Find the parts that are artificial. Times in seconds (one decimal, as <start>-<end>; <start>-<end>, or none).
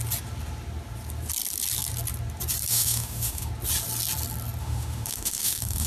2.7-3.5; 4.6-5.9